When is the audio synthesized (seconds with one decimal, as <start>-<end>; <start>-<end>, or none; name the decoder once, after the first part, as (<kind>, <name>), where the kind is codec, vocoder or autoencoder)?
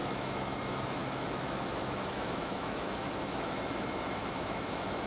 0.0-5.1 (autoencoder, DAC-VAE)